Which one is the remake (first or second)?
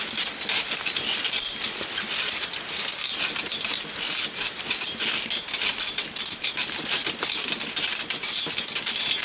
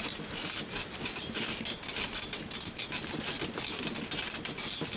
first